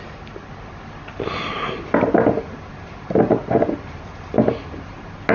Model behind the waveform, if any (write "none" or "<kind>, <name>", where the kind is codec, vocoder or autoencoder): none